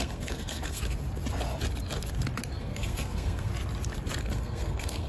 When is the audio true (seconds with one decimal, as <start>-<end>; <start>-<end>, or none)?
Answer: 0.8-2.6; 3.5-4.2